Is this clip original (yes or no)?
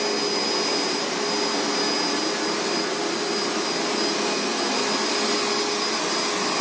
yes